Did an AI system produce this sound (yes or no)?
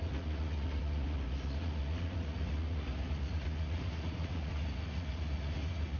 yes